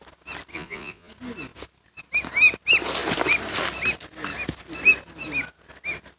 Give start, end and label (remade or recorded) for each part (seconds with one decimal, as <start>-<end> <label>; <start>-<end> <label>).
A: 0.0-0.5 recorded; 0.5-1.1 remade; 1.1-6.2 recorded